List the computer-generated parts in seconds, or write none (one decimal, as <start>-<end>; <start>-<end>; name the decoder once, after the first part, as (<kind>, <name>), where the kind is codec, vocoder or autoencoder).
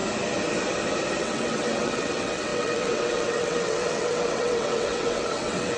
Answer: 1.2-5.8 (vocoder, WaveNeXt)